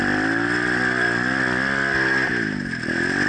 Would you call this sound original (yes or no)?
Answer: yes